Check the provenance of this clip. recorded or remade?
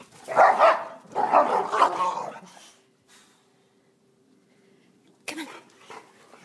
recorded